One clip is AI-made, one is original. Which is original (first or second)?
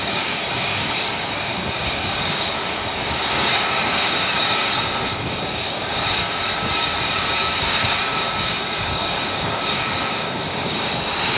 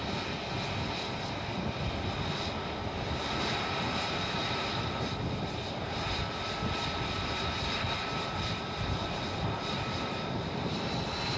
second